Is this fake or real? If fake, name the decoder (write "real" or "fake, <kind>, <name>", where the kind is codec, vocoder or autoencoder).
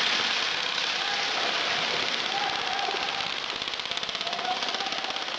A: real